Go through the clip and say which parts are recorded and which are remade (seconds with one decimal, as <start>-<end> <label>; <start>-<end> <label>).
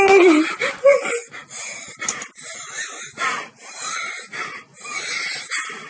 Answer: 0.0-5.9 recorded